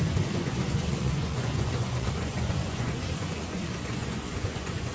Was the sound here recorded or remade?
remade